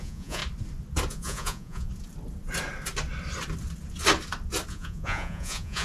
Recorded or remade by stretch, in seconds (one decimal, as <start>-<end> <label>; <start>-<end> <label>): 0.0-0.4 remade; 0.4-1.1 recorded; 1.1-1.9 remade; 1.9-4.7 recorded; 4.7-5.8 remade

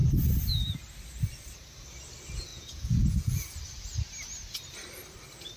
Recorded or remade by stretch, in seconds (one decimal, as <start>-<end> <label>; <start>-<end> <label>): 0.0-2.5 recorded; 2.5-3.4 remade; 3.4-5.6 recorded